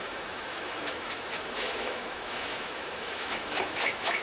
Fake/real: fake